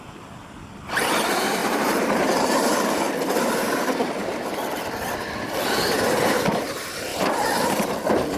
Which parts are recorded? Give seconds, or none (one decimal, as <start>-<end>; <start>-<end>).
0.0-1.6; 3.1-4.2; 5.0-7.1; 7.9-8.4